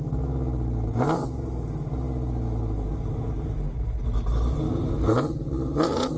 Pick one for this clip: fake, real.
real